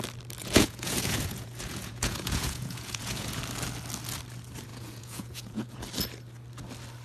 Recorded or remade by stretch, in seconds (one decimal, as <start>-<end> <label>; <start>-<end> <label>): 0.0-0.4 recorded; 0.4-3.4 remade; 3.4-4.7 recorded; 4.7-5.8 remade; 5.8-7.0 recorded